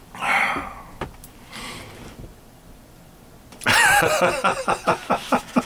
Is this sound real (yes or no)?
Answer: no